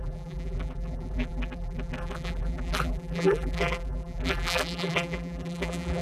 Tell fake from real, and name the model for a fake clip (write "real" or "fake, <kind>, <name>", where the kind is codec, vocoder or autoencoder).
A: fake, vocoder, BigVGAN v2